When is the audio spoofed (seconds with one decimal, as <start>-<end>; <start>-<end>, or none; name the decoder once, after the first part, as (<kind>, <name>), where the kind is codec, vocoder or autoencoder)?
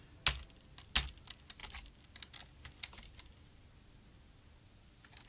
none